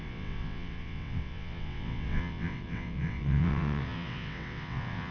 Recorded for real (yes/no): no